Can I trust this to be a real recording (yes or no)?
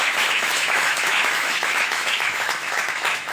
no